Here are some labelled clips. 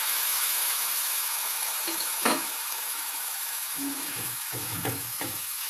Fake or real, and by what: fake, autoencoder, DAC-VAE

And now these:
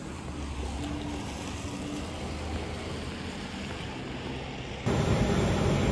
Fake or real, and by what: real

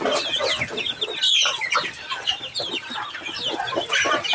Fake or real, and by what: real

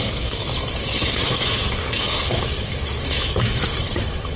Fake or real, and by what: fake, autoencoder, DAC-VAE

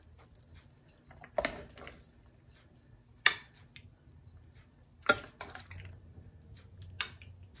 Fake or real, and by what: real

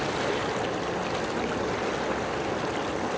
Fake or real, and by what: real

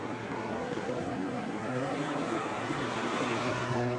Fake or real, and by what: fake, codec, SNAC